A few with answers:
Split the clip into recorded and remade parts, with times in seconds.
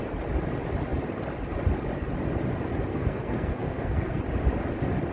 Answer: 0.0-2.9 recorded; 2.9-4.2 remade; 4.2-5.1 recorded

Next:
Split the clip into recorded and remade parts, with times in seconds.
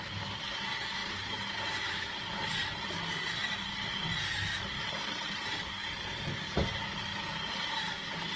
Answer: 0.0-8.4 recorded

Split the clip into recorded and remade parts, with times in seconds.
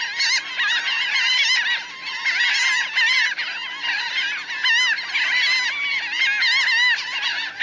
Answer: 0.0-7.6 recorded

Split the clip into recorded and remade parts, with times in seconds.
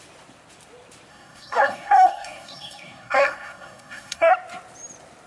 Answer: 0.0-1.1 recorded; 1.1-4.3 remade; 4.3-5.3 recorded